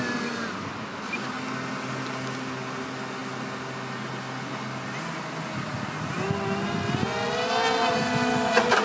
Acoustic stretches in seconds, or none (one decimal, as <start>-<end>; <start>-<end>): 0.0-8.8